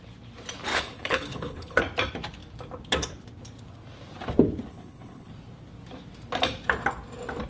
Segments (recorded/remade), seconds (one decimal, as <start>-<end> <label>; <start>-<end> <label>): 0.0-0.7 recorded; 0.7-1.8 remade; 1.8-4.7 recorded; 4.7-5.3 remade; 5.3-7.5 recorded